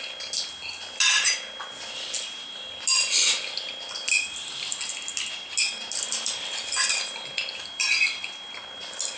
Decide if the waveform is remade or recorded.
recorded